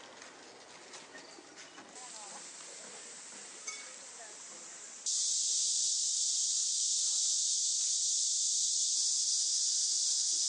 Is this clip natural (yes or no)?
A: yes